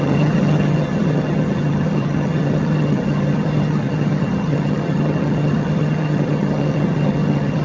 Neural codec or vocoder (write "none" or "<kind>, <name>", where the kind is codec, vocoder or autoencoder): vocoder, HiFi-GAN